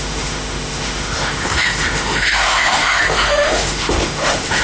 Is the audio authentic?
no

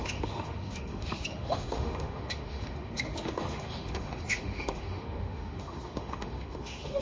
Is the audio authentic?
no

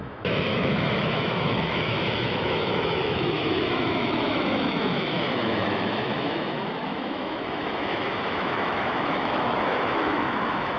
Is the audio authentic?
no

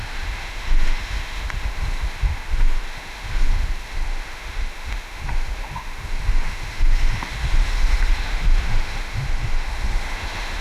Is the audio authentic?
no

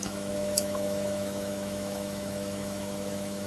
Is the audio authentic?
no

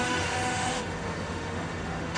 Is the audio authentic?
no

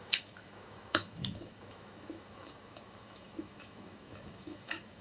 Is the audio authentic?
no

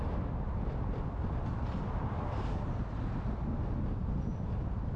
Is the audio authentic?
yes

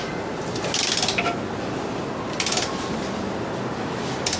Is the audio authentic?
yes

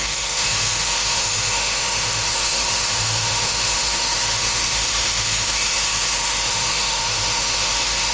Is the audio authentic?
no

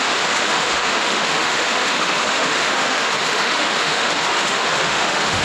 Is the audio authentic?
no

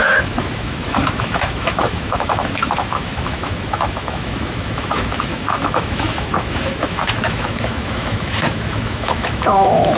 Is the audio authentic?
no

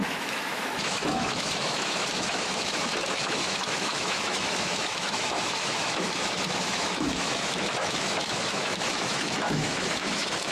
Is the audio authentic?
no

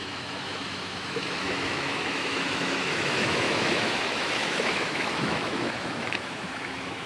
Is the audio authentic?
no